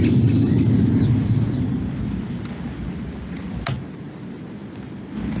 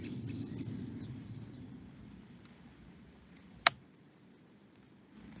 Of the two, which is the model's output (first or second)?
second